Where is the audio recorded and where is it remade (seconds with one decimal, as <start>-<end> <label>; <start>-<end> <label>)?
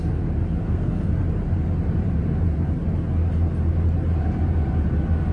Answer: 0.0-0.6 recorded; 0.6-1.1 remade; 1.1-5.3 recorded